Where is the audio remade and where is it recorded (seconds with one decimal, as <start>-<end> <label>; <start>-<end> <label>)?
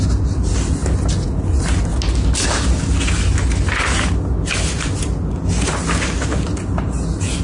0.0-7.4 recorded